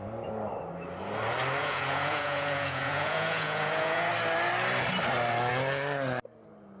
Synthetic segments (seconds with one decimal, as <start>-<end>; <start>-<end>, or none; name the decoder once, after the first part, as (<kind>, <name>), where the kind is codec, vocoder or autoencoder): 1.6-4.1 (vocoder, Vocos)